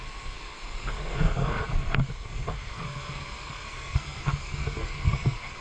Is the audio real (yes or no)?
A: no